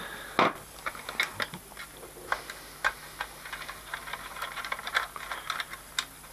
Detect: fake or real real